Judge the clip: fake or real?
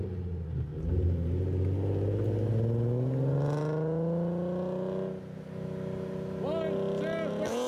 real